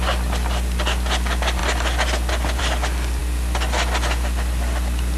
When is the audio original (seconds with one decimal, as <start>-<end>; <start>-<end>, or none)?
0.0-5.2